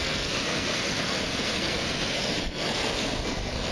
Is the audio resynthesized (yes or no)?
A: yes